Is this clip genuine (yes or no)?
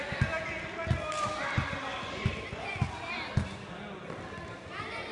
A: yes